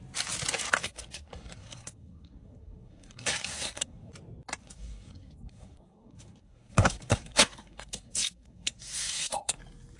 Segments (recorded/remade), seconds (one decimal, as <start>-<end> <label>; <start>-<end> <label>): 0.0-0.8 recorded; 0.8-4.1 remade; 4.1-4.6 recorded; 4.6-9.6 remade; 9.6-10.0 recorded